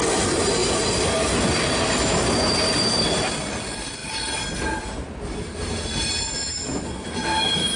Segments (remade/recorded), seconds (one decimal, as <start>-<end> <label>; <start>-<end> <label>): 0.0-4.0 recorded; 4.0-4.8 remade; 4.8-7.8 recorded